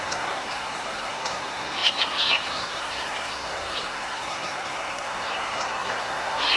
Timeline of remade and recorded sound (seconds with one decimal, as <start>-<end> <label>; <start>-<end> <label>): 0.0-6.6 remade